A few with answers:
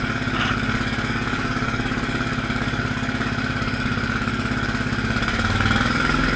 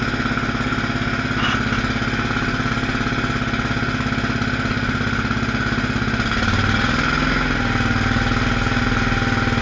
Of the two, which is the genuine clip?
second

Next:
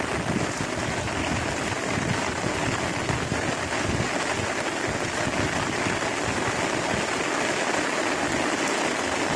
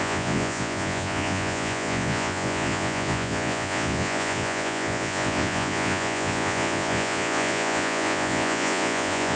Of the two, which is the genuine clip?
first